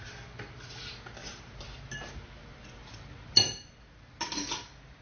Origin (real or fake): real